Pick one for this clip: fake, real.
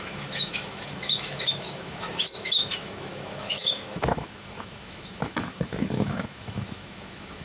fake